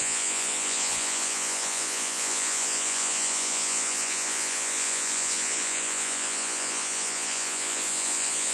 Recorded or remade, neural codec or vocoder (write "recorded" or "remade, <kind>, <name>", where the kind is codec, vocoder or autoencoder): remade, vocoder, Vocos